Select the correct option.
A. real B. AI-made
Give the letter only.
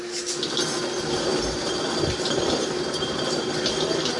A